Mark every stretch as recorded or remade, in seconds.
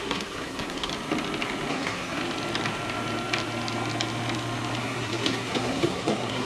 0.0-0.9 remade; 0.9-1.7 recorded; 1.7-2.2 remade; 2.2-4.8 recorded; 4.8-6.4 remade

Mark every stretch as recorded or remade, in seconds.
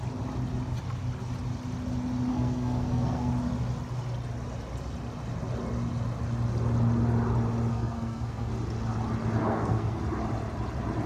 0.0-2.3 recorded; 2.3-3.3 remade; 3.3-7.7 recorded; 7.7-8.5 remade; 8.5-9.4 recorded; 9.4-10.0 remade; 10.0-11.1 recorded